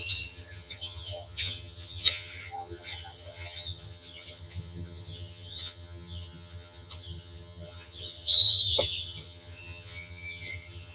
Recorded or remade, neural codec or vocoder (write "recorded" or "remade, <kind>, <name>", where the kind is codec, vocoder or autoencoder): remade, vocoder, HiFi-GAN